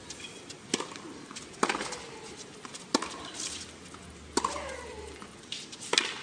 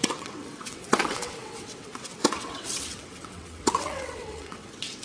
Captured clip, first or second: first